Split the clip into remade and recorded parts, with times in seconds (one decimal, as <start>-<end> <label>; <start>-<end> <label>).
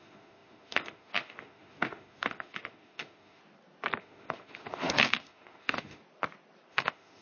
0.0-3.4 remade; 3.4-4.0 recorded; 4.0-6.0 remade; 6.0-6.7 recorded; 6.7-7.2 remade